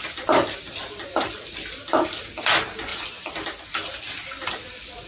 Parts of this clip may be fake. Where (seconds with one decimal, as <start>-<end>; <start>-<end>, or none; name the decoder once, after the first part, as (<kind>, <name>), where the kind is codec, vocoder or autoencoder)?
none

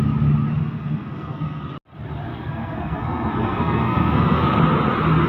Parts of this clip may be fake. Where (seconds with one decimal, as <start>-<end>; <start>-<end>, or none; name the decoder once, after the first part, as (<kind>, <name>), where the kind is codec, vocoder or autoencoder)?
0.6-1.7 (codec, SNAC); 2.3-4.6

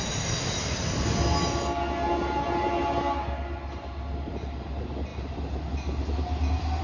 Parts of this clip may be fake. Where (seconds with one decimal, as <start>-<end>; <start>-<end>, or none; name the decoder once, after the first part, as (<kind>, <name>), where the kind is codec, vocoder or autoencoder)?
none

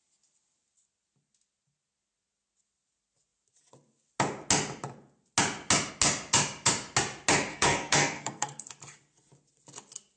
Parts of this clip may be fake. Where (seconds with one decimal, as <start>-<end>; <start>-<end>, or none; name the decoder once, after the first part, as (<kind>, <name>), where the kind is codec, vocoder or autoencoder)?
7.5-8.7 (codec, SNAC)

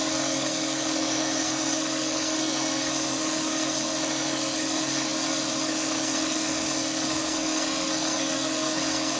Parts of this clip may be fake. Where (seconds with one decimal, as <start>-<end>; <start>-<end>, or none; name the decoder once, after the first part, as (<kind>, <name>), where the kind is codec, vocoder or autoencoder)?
0.0-9.2 (codec, SNAC)